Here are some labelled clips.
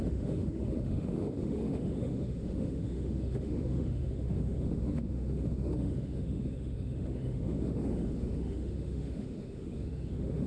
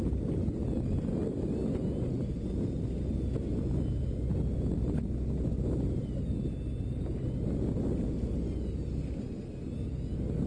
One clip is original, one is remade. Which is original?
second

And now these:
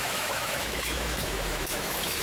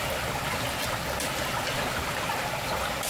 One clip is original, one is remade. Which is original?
second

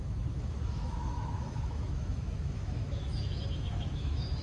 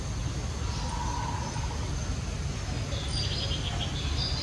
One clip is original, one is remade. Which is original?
second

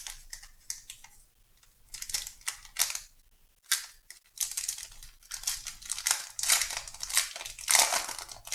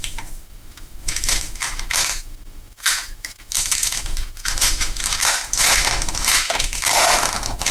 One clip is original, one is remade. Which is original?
first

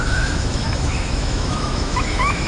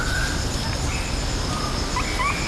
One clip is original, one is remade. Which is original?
second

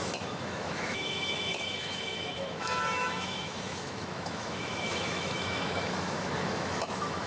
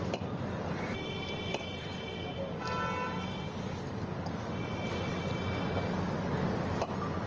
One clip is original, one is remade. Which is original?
second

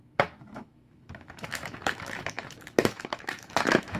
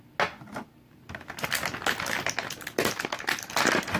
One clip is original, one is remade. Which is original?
second